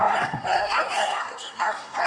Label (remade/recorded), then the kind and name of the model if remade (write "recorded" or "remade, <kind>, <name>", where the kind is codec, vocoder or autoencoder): remade, codec, SNAC